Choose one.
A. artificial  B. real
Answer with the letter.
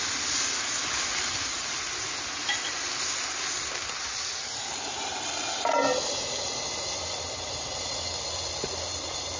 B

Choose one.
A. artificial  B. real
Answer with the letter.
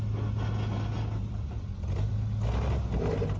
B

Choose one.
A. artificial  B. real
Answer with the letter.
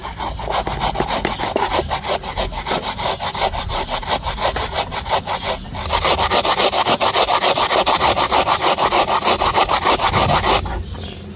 B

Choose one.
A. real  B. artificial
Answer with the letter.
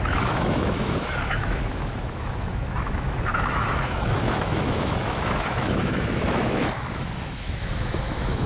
B